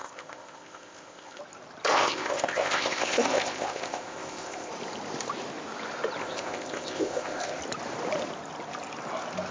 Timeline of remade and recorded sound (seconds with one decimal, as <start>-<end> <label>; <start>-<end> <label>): 0.0-1.4 remade; 1.4-1.9 recorded; 1.9-4.7 remade; 4.7-6.2 recorded; 6.2-7.6 remade; 7.6-9.5 recorded